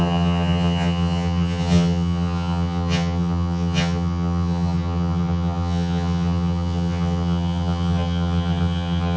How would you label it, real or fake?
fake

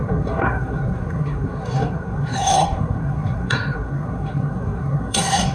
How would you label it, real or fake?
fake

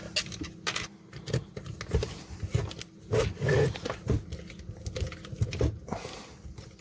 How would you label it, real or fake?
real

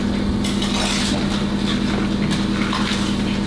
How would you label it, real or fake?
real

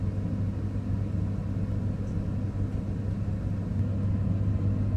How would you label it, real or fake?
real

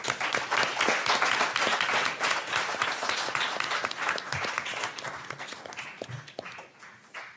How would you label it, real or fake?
real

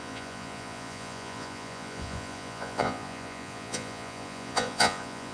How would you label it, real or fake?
fake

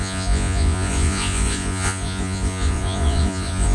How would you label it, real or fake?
fake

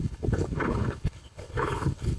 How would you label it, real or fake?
fake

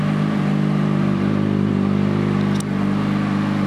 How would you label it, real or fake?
real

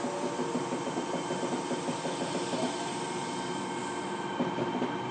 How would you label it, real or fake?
real